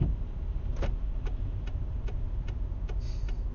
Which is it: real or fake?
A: real